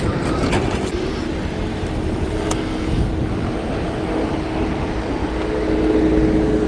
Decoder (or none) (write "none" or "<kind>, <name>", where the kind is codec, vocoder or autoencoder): none